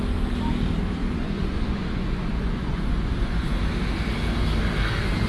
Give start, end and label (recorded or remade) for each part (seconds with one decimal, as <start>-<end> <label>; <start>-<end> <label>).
0.0-1.0 recorded; 1.0-3.5 remade; 3.5-5.3 recorded